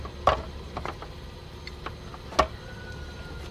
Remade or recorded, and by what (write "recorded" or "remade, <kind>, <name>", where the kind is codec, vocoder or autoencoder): recorded